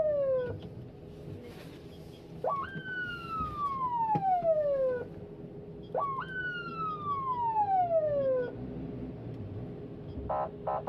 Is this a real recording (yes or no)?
yes